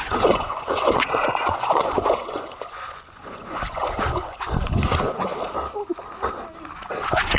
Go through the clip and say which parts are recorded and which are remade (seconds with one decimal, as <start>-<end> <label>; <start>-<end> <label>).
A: 0.0-5.3 remade; 5.3-7.0 recorded; 7.0-7.4 remade

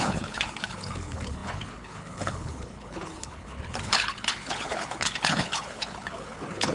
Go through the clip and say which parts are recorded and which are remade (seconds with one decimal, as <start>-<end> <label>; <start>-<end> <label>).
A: 0.0-6.7 remade

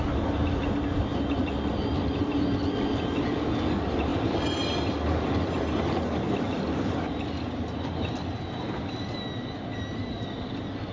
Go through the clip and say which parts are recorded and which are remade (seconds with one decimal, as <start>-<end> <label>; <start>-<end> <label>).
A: 0.0-10.9 recorded

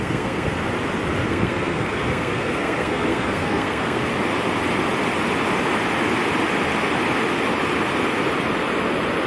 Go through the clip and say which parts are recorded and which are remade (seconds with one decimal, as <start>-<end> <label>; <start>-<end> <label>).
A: 0.0-0.6 remade; 0.6-1.3 recorded; 1.3-4.1 remade; 4.1-9.3 recorded

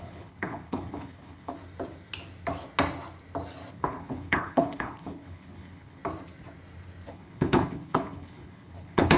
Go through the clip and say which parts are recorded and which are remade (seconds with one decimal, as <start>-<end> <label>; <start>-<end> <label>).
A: 0.0-1.5 remade; 1.5-3.7 recorded; 3.7-6.0 remade; 6.0-7.1 recorded; 7.1-9.2 remade